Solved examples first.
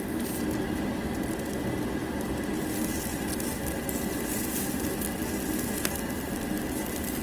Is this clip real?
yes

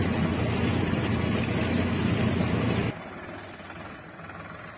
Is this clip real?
yes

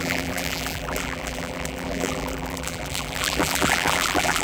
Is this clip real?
no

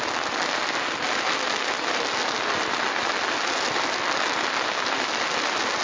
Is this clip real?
yes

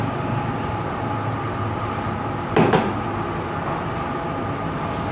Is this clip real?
yes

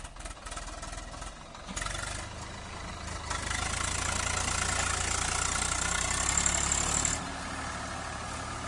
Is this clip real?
yes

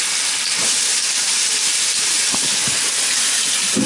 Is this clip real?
yes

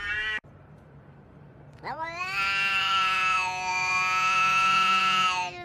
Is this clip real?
no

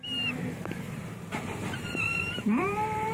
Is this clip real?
no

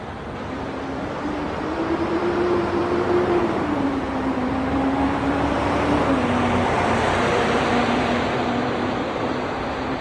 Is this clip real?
no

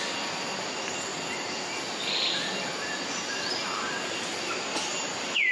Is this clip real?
yes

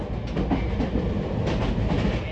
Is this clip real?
yes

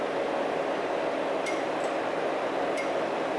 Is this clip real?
yes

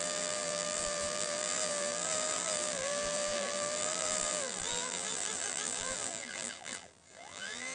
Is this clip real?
no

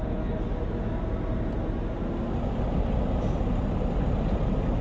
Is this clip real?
yes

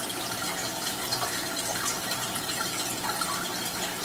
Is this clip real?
yes